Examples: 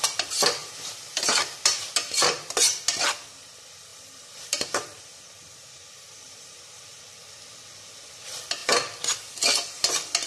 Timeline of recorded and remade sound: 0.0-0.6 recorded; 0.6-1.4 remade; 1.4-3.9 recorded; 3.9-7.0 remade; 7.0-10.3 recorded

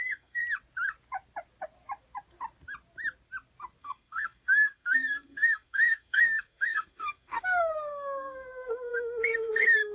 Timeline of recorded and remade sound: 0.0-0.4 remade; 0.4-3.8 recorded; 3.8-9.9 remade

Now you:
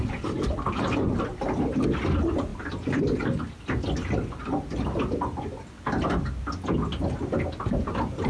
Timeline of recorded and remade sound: 0.0-8.3 recorded